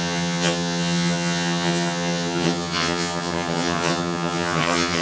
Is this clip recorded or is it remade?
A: remade